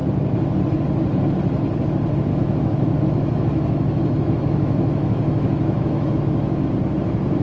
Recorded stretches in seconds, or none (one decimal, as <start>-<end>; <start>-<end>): 0.0-2.3; 6.7-7.4